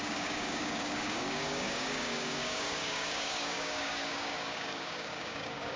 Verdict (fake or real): fake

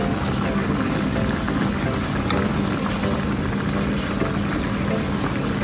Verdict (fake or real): real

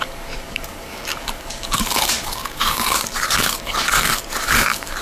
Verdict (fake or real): fake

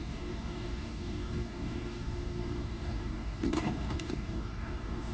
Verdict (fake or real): fake